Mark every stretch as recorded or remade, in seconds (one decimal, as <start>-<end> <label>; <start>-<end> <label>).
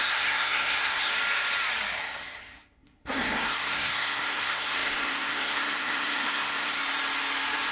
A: 0.0-1.1 remade; 1.1-2.0 recorded; 2.0-6.8 remade; 6.8-7.7 recorded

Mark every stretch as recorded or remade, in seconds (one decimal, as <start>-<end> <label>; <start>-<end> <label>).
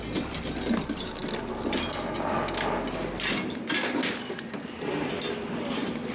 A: 0.0-6.1 recorded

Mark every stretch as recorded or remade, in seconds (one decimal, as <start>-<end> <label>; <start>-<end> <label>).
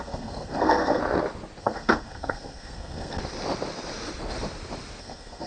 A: 0.0-1.0 remade; 1.0-1.6 recorded; 1.6-3.2 remade; 3.2-5.0 recorded; 5.0-5.5 remade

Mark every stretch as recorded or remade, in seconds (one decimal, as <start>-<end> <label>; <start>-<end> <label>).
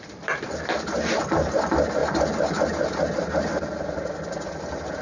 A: 0.0-5.0 recorded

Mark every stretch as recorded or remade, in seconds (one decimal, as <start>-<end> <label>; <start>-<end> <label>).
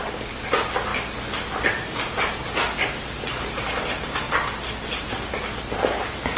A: 0.0-6.4 recorded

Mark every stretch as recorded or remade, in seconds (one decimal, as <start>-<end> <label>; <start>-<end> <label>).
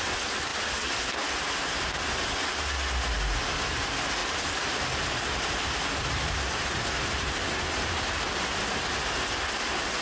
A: 0.0-4.2 recorded; 4.2-8.1 remade; 8.1-10.0 recorded